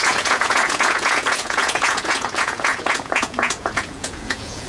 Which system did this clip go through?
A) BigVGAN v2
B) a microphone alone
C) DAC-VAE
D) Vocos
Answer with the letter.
D